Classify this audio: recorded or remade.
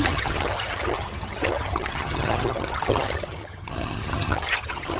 remade